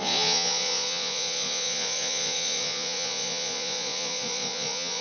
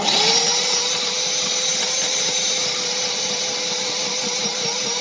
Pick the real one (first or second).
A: second